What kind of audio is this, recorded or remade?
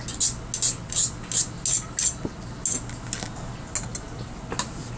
recorded